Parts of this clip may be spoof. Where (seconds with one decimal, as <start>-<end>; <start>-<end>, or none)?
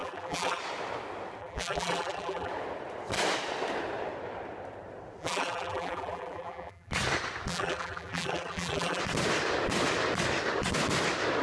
0.0-0.6; 1.4-2.5; 5.2-6.9; 7.5-9.0